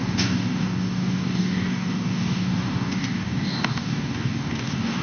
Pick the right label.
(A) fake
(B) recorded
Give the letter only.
A